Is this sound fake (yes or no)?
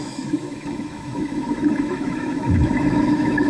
yes